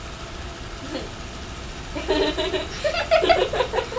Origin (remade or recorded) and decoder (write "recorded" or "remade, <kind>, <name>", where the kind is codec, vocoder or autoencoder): recorded